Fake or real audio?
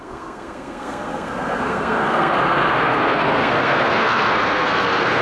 fake